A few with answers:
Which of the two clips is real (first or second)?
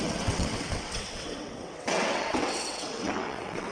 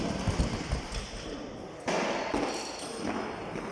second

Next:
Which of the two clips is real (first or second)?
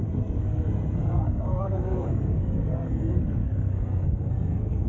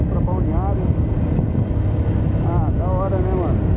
second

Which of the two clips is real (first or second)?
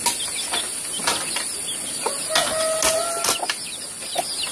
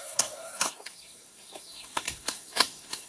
first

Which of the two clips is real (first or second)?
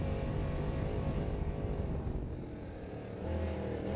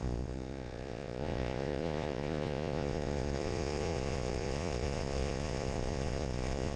first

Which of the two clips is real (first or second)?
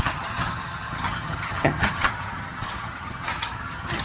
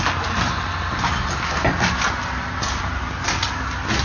second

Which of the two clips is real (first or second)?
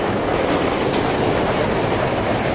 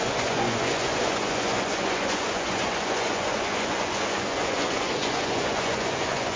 first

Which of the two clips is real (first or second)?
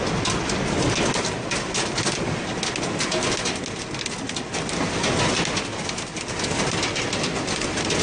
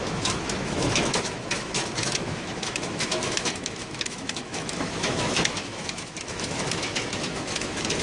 first